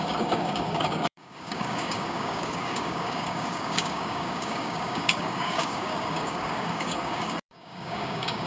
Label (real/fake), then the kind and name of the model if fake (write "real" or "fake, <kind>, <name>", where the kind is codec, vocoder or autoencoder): fake, codec, DAC